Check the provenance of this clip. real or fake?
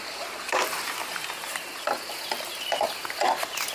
fake